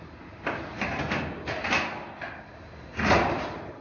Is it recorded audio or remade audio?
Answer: recorded